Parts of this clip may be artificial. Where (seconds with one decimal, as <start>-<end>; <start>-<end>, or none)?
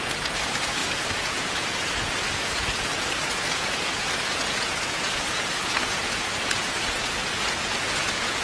0.0-8.4